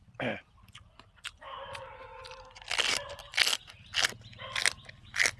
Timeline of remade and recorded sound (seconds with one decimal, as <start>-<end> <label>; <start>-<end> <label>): 0.0-5.4 recorded

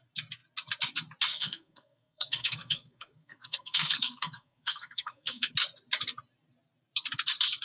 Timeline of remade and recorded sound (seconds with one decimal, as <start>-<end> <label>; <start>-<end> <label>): 0.0-1.3 recorded; 1.3-5.5 remade; 5.5-7.6 recorded